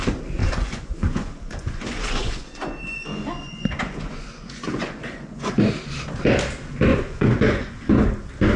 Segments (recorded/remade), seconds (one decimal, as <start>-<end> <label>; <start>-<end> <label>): 0.0-0.4 recorded; 0.4-5.5 remade; 5.5-6.9 recorded; 6.9-7.8 remade; 7.8-8.6 recorded